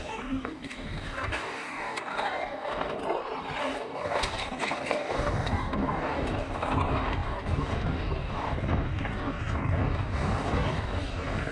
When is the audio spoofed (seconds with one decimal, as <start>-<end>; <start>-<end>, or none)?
0.0-3.0; 3.6-11.5